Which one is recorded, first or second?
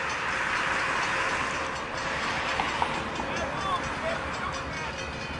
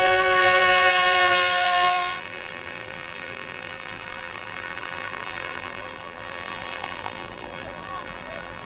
first